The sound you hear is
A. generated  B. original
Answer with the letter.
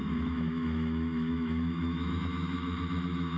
A